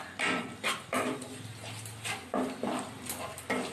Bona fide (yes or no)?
yes